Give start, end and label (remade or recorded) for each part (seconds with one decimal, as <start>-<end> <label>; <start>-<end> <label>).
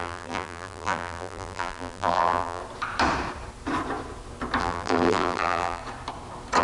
0.0-2.6 remade; 2.6-4.6 recorded; 4.6-5.8 remade; 5.8-6.6 recorded